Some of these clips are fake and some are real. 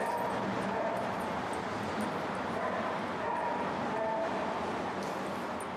real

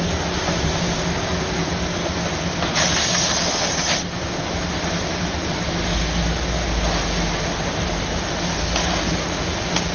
real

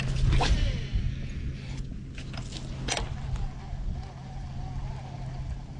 real